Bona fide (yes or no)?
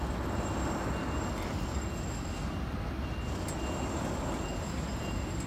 yes